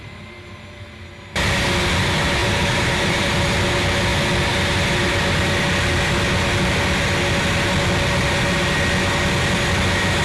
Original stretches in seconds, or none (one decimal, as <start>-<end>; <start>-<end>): 0.0-2.4; 3.4-10.2